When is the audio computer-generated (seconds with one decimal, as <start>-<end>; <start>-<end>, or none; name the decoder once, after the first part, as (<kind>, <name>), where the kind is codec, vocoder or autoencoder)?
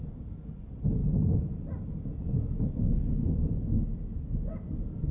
none